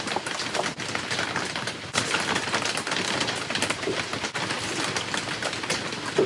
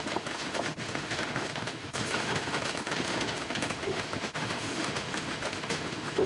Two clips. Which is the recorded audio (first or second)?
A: first